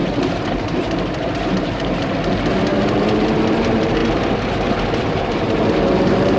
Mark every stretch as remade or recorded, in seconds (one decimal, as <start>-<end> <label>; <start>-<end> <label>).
0.0-2.7 remade; 2.7-3.5 recorded; 3.5-4.0 remade; 4.0-4.9 recorded; 4.9-6.4 remade